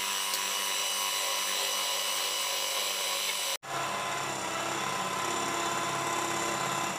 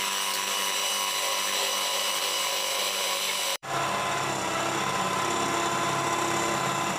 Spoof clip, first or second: second